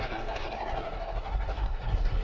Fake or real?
fake